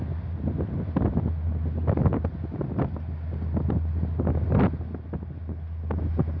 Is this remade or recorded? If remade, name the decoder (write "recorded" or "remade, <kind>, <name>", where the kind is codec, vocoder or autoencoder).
recorded